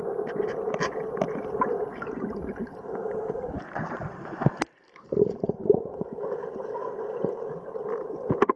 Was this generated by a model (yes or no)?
no